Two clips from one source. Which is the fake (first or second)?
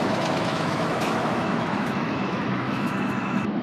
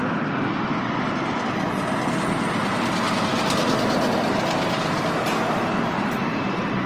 first